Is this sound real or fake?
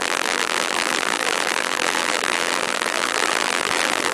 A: fake